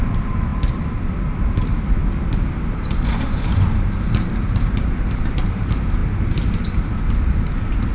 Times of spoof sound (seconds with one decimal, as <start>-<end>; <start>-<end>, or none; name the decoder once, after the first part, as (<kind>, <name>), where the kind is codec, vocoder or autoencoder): 0.0-7.9 (vocoder, BigVGAN v2)